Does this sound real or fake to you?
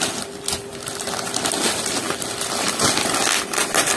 real